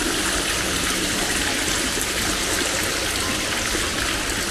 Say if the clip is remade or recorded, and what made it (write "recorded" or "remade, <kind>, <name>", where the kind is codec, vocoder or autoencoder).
recorded